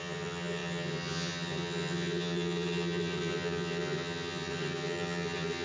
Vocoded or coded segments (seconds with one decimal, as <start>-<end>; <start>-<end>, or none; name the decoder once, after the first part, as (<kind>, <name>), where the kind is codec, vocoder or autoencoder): 0.0-5.6 (vocoder, HiFi-GAN)